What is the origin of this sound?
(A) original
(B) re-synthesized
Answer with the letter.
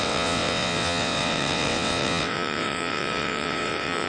B